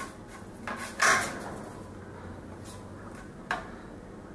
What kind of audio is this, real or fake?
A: real